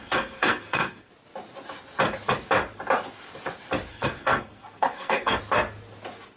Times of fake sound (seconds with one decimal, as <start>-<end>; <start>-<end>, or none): 0.0-1.1; 3.9-5.4